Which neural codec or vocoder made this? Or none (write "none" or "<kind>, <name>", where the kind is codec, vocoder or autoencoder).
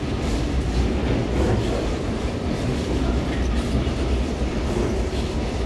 none